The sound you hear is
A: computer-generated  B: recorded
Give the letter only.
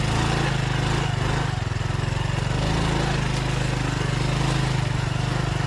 B